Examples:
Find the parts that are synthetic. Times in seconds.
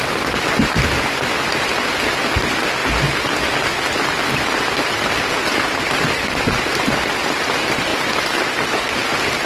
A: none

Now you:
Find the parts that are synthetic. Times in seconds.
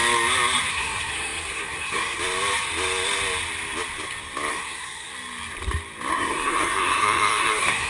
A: 0.7-2.2 (codec, SNAC); 4.5-5.1; 6.1-7.9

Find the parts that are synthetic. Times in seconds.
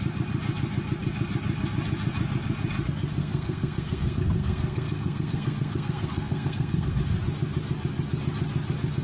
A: 3.2-7.0 (codec, SNAC)